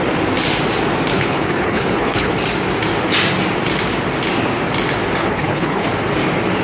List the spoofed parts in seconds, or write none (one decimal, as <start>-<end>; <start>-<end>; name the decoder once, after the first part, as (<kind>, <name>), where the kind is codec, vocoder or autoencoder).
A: 1.1-2.3 (codec, HILCodec); 5.2-5.9